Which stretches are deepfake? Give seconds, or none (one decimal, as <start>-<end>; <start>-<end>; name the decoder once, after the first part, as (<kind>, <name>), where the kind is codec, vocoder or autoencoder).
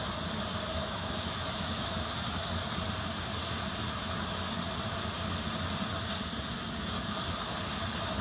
0.8-2.4 (autoencoder, DAC-VAE); 4.0-4.5